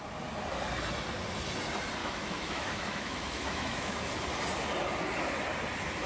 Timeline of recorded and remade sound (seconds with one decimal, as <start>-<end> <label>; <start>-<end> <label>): 0.0-2.0 recorded; 2.0-4.0 remade; 4.0-6.1 recorded